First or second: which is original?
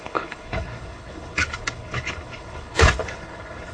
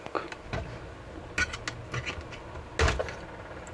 second